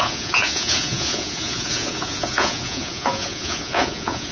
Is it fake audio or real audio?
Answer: fake